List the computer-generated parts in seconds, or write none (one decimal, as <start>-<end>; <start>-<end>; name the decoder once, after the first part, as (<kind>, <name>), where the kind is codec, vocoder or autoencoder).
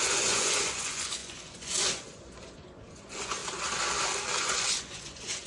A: 0.0-3.4 (vocoder, Vocos); 4.4-5.5